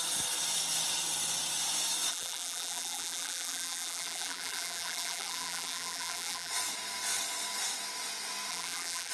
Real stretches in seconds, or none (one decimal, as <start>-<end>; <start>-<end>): 0.0-2.1; 6.5-8.5